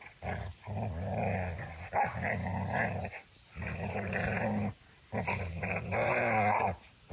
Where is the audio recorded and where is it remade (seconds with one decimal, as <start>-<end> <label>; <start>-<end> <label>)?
0.0-2.5 recorded; 2.5-6.1 remade; 6.1-7.1 recorded